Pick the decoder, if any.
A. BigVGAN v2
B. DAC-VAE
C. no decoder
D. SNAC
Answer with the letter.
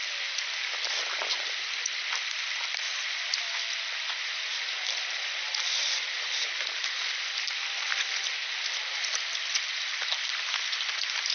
C